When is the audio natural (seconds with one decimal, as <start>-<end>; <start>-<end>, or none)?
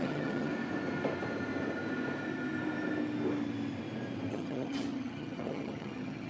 0.5-4.3